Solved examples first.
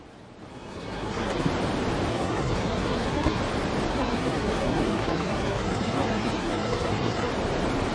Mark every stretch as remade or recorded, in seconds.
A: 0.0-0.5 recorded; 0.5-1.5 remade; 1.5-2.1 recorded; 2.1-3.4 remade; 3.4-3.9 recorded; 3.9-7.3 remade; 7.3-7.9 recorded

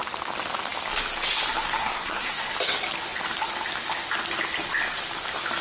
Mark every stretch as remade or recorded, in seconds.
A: 0.0-1.8 recorded; 1.8-2.5 remade; 2.5-5.6 recorded

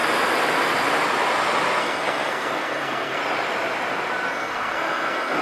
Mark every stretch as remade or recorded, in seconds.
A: 0.0-1.8 recorded; 1.8-3.2 remade; 3.2-4.3 recorded; 4.3-5.4 remade

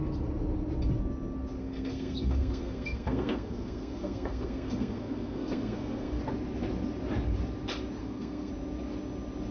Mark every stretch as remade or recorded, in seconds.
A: 0.0-1.6 recorded; 1.6-6.2 remade; 6.2-8.0 recorded; 8.0-8.5 remade; 8.5-9.5 recorded

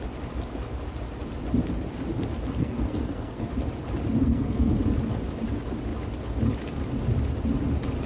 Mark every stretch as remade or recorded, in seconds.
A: 0.0-2.6 recorded; 2.6-3.5 remade; 3.5-4.2 recorded; 4.2-4.7 remade; 4.7-8.1 recorded